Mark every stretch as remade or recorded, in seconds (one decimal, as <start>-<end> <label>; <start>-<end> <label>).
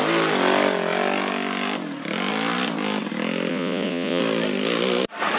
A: 0.0-3.5 recorded; 3.5-4.2 remade; 4.2-5.4 recorded